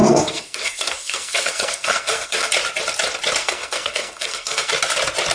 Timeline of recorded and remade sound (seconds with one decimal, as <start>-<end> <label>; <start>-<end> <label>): 0.0-2.5 remade; 2.5-3.4 recorded; 3.4-4.7 remade; 4.7-5.3 recorded